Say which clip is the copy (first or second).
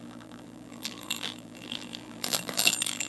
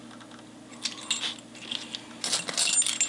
first